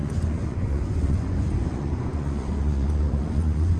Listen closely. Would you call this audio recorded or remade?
remade